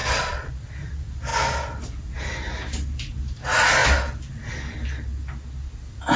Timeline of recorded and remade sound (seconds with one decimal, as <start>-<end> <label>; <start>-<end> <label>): 0.0-0.5 remade; 0.5-6.2 recorded